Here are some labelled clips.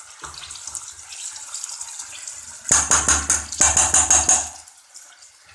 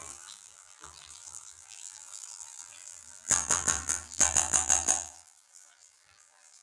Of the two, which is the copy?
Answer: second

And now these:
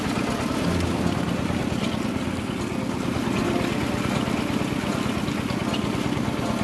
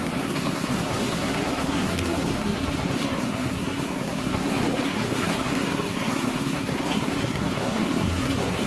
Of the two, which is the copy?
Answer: second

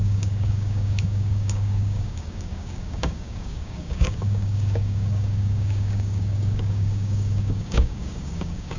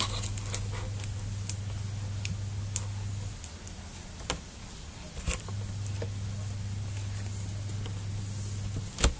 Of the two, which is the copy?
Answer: first